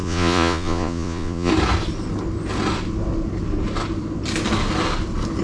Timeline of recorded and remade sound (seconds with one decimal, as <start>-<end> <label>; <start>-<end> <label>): 0.0-1.5 remade; 1.5-5.4 recorded